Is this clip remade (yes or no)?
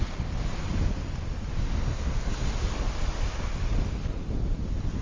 no